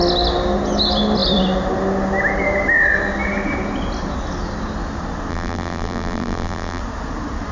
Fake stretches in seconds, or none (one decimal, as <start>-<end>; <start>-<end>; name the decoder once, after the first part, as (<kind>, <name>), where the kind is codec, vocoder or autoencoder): 5.3-6.8 (vocoder, BigVGAN v2)